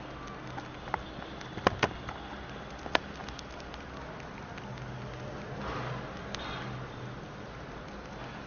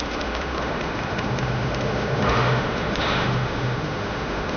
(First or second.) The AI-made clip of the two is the second